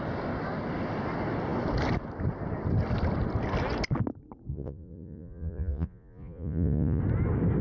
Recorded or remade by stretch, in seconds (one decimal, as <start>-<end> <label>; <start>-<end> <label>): 0.0-4.5 recorded; 4.5-7.0 remade; 7.0-7.6 recorded